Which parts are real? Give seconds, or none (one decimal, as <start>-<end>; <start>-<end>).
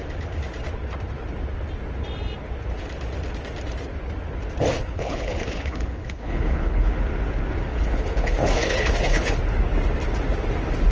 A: 0.0-4.8; 6.9-7.7; 9.4-10.9